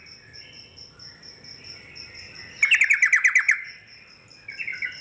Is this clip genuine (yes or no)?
yes